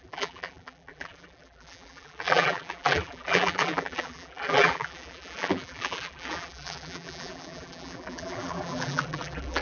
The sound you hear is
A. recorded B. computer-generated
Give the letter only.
B